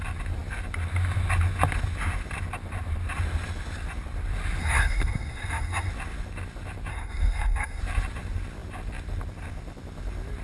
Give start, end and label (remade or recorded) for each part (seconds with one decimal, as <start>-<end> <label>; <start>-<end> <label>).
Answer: 0.0-4.6 recorded; 4.6-5.9 remade; 5.9-6.9 recorded; 6.9-7.8 remade; 7.8-10.4 recorded